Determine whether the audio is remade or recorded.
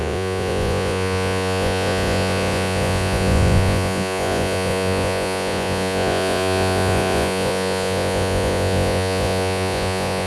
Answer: remade